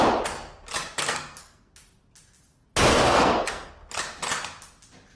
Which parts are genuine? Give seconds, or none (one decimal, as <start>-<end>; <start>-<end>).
0.0-0.8; 1.7-2.9; 3.7-5.2